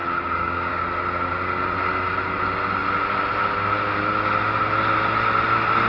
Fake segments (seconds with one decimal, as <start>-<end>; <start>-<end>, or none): 0.0-0.7